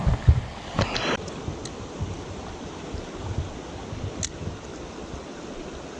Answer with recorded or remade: recorded